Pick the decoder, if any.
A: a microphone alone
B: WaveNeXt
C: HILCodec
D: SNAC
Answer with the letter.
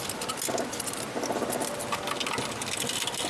A